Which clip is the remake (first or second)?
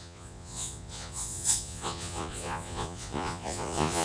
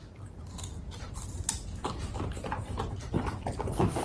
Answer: first